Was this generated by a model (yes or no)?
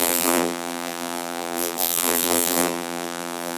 yes